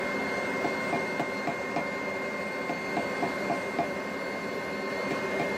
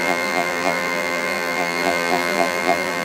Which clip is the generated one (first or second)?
second